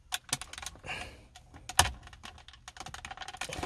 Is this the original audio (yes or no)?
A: yes